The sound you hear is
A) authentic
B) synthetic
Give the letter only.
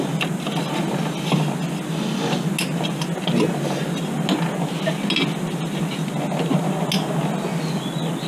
A